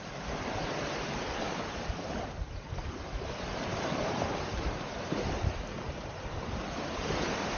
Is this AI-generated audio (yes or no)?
yes